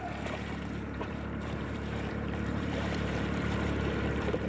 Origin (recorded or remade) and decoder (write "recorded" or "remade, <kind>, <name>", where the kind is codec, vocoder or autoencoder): remade, vocoder, BigVGAN v2